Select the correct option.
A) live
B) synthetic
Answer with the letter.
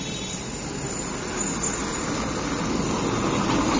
A